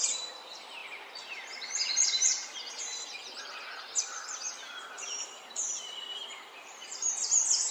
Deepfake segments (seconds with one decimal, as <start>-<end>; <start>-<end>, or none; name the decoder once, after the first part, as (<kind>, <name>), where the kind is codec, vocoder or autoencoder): 4.0-7.1 (vocoder, BigVGAN v2)